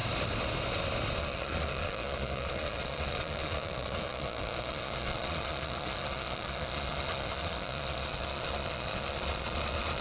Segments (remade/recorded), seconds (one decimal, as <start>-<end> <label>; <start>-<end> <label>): 0.0-1.2 recorded; 1.2-10.0 remade